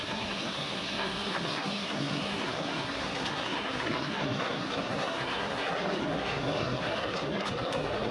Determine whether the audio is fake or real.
fake